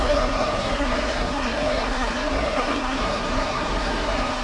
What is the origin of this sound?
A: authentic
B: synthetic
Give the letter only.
B